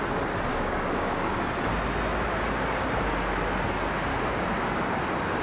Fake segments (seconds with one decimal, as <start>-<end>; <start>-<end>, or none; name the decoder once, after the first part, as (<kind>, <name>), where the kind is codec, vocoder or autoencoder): 0.5-1.4 (codec, DAC); 4.1-5.0